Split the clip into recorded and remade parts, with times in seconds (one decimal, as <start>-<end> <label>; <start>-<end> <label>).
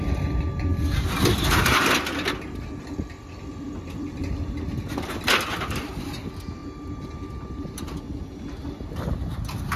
0.0-9.8 recorded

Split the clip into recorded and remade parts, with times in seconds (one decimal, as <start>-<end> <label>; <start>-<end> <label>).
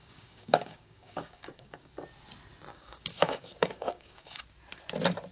0.0-1.9 remade; 1.9-2.7 recorded; 2.7-4.4 remade; 4.4-5.3 recorded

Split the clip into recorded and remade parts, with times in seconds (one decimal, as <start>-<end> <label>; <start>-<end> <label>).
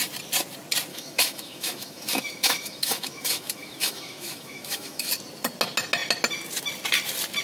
0.0-0.9 recorded; 0.9-5.1 remade; 5.1-7.4 recorded